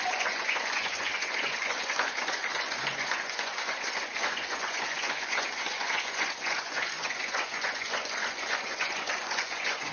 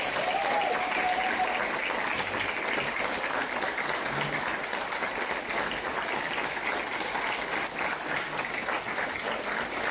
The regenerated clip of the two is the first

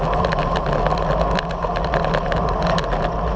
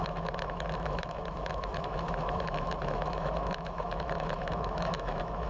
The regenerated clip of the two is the second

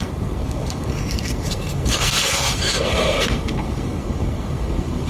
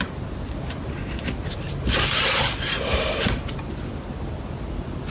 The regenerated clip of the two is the first